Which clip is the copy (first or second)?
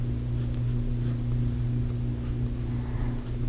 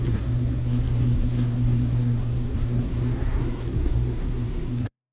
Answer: second